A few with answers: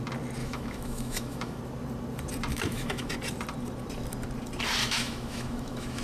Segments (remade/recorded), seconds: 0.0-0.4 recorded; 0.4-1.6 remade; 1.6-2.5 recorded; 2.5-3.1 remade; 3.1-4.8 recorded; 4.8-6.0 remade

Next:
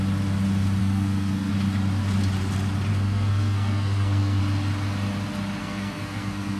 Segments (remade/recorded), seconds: 0.0-0.8 recorded; 0.8-1.5 remade; 1.5-2.9 recorded; 2.9-4.4 remade; 4.4-5.6 recorded; 5.6-6.6 remade

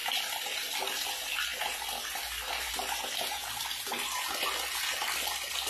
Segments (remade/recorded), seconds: 0.0-5.7 recorded

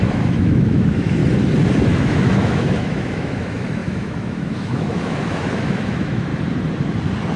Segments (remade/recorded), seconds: 0.0-1.2 remade; 1.2-1.8 recorded; 1.8-6.3 remade; 6.3-7.4 recorded

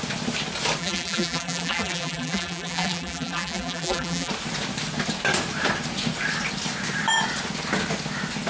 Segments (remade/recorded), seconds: 0.0-0.8 recorded; 0.8-4.3 remade; 4.3-8.5 recorded

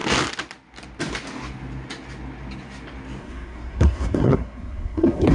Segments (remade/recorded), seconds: 0.0-3.2 recorded; 3.2-5.3 remade

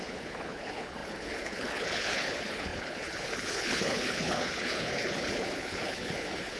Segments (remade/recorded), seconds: 0.0-6.6 remade

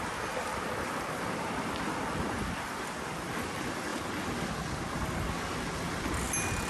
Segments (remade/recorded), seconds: 0.0-3.9 remade; 3.9-6.7 recorded